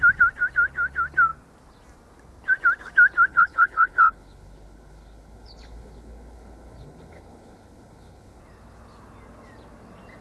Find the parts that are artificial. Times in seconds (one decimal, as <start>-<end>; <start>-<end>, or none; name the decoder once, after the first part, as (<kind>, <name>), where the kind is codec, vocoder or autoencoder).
3.3-8.4 (codec, HILCodec)